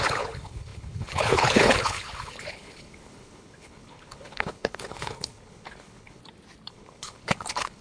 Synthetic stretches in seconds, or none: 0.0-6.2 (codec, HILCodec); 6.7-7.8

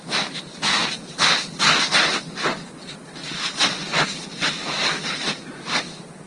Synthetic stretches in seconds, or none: none

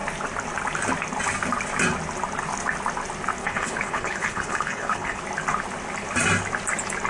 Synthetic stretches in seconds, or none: 3.4-5.2 (codec, HILCodec)

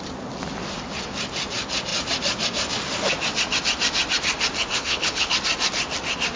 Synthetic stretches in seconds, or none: 4.7-5.3 (codec, HILCodec)

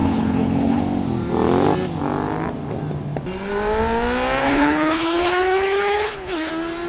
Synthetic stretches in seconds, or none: 0.0-0.8 (codec, HILCodec); 4.4-6.5